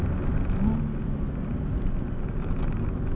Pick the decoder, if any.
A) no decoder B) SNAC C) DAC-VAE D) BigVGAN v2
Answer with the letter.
A